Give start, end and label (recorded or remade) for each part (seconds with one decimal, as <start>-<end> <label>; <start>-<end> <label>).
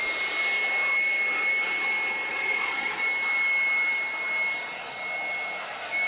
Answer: 0.0-2.3 recorded; 2.3-3.0 remade; 3.0-6.1 recorded